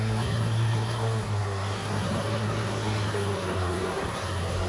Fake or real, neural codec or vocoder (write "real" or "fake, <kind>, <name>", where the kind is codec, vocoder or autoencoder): fake, codec, SNAC